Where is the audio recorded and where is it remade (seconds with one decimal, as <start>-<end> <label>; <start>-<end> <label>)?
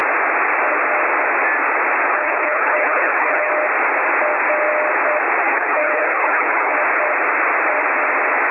0.0-2.1 recorded; 2.1-3.5 remade; 3.5-5.4 recorded; 5.4-6.7 remade; 6.7-8.5 recorded